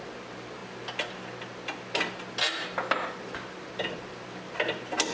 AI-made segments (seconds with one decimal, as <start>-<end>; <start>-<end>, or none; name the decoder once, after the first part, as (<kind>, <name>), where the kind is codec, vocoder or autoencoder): none